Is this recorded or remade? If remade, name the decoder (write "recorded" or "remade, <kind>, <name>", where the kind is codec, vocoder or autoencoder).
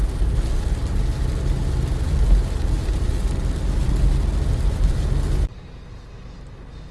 recorded